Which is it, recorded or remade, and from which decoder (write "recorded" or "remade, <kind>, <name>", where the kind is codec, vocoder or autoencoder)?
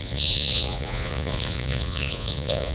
remade, vocoder, Vocos